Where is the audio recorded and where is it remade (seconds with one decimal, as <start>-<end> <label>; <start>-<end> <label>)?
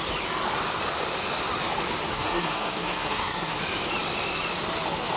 0.0-2.1 recorded; 2.1-3.6 remade; 3.6-5.2 recorded